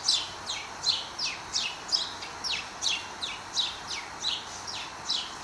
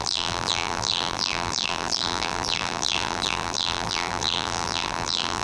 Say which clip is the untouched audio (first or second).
first